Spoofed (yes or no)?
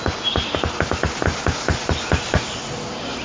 no